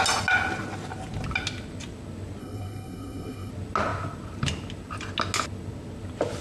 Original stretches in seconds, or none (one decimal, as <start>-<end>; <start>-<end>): 0.0-2.4; 3.5-6.4